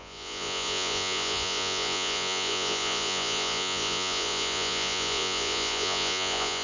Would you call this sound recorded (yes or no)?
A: no